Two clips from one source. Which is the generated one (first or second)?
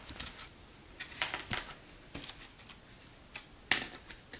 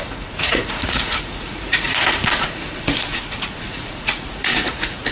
second